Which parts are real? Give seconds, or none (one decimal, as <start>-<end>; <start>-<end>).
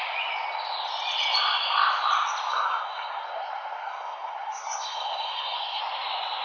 0.0-2.5; 5.8-6.4